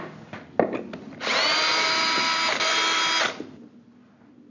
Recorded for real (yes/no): yes